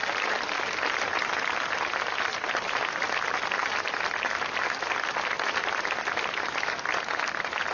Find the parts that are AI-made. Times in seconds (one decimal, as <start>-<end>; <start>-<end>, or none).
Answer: 0.0-0.6